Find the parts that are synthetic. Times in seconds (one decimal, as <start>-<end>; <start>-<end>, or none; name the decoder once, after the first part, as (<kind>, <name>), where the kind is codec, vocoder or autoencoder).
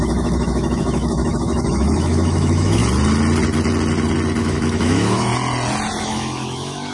0.0-2.8 (autoencoder, DAC-VAE); 4.4-5.3; 6.0-6.9